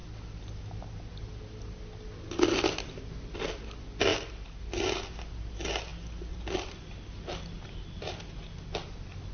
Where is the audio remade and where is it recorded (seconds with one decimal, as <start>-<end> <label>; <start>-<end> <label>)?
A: 0.0-0.7 remade; 0.7-4.1 recorded; 4.1-4.6 remade; 4.6-5.9 recorded; 5.9-7.0 remade; 7.0-9.3 recorded